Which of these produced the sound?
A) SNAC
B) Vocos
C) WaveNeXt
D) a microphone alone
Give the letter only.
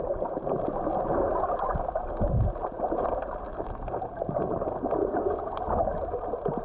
D